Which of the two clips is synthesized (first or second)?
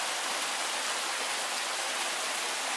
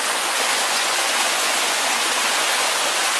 second